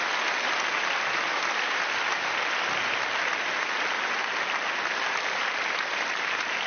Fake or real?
real